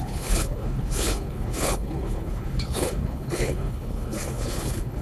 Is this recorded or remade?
remade